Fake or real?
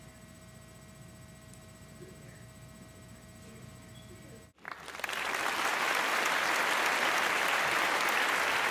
real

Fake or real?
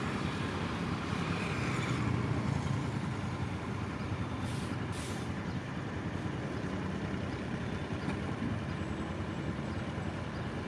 real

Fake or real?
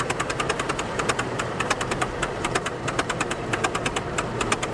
fake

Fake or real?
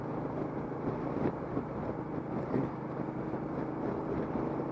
real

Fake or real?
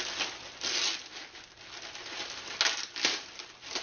real